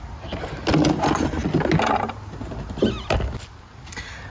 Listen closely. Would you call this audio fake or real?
real